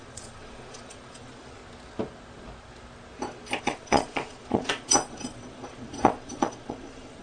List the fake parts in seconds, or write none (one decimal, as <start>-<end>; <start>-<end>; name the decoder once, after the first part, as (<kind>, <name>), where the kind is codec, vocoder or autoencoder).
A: 0.0-1.6 (vocoder, Vocos); 3.6-7.2

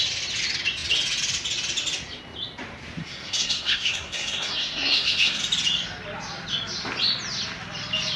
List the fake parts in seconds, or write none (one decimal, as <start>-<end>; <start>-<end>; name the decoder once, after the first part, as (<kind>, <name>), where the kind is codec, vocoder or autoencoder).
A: 3.0-5.4 (codec, SNAC)

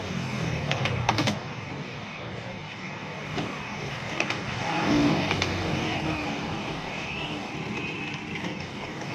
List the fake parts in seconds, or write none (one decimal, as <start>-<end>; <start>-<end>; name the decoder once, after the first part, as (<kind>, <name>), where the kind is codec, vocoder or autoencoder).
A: 0.0-7.5 (codec, DAC); 8.4-9.1

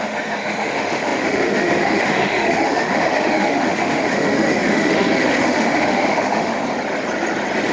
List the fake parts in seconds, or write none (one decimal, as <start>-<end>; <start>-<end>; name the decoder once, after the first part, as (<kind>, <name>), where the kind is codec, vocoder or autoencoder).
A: 0.0-6.6 (autoencoder, DAC-VAE)

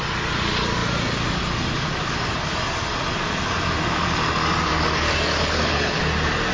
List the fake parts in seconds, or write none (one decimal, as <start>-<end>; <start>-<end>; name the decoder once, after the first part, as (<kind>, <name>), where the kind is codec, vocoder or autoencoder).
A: 5.4-6.0 (codec, HILCodec)

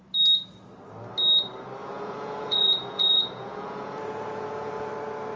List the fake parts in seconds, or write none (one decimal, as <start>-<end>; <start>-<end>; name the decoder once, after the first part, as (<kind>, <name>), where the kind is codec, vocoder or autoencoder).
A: 1.8-4.9 (vocoder, Vocos)

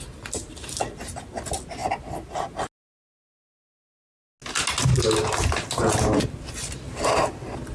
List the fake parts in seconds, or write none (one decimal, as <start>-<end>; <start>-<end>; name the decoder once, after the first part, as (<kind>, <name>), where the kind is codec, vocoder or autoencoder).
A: none

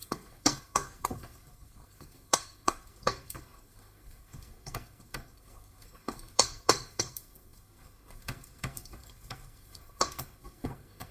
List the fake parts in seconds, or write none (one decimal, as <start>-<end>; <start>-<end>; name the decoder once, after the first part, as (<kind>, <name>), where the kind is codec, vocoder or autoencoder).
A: 0.0-11.1 (codec, SNAC)